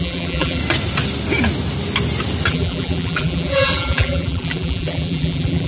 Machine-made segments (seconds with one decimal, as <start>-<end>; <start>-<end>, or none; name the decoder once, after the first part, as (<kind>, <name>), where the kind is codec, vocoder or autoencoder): 0.0-0.6 (vocoder, BigVGAN v2); 2.5-5.7